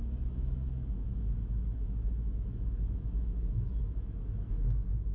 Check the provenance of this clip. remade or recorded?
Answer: remade